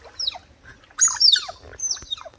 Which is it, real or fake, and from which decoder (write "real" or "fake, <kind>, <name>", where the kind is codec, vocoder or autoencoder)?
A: real